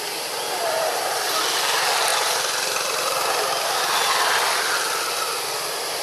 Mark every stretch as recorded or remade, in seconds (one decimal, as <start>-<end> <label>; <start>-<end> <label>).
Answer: 0.0-2.1 recorded; 2.1-4.6 remade; 4.6-6.0 recorded